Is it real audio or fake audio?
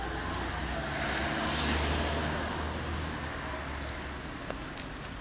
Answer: real